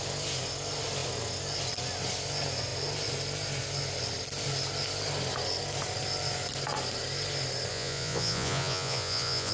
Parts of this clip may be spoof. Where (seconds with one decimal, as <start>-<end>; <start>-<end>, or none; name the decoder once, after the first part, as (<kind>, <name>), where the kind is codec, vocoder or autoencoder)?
7.7-9.5 (vocoder, Vocos)